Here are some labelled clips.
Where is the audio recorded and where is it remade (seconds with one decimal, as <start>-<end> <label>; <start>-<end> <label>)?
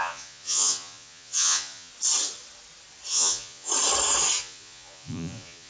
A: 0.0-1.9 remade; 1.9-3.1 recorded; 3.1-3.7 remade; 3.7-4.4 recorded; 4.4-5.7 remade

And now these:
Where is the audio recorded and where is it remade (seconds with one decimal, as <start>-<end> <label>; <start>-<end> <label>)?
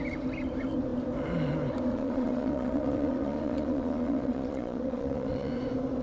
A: 0.0-1.9 recorded; 1.9-5.5 remade; 5.5-6.0 recorded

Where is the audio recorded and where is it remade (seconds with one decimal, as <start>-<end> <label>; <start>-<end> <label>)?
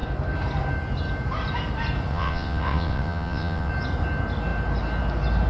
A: 0.0-2.1 recorded; 2.1-3.7 remade; 3.7-5.5 recorded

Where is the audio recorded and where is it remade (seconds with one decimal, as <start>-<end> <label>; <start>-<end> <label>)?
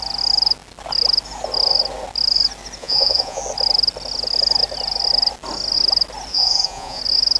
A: 0.0-2.8 recorded; 2.8-3.4 remade; 3.4-6.3 recorded; 6.3-7.0 remade; 7.0-7.4 recorded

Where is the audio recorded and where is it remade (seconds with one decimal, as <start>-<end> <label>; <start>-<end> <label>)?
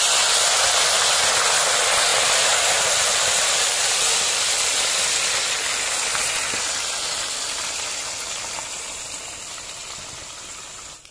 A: 0.0-11.1 recorded